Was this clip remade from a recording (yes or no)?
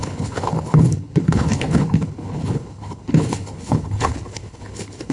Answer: yes